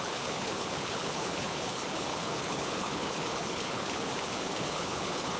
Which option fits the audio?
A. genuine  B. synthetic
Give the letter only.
B